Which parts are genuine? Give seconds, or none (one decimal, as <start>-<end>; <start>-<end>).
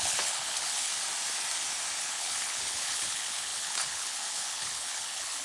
0.9-2.0